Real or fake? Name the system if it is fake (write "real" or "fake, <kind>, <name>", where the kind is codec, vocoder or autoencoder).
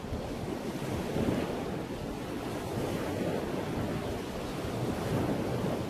real